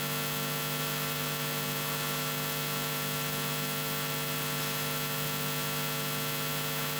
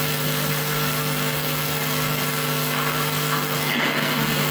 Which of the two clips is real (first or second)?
first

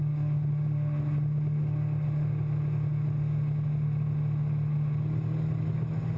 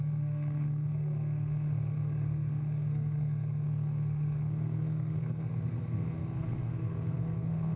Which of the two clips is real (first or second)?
first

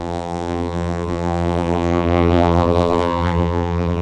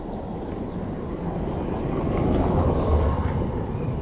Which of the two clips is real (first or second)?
second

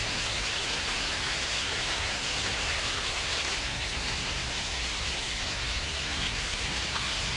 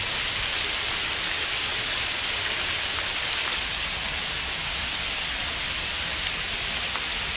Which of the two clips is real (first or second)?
second